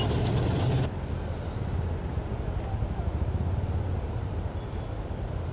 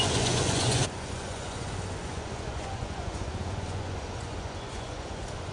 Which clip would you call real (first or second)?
first